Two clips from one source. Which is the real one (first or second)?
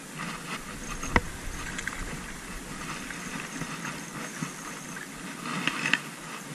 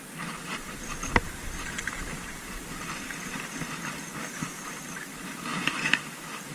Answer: first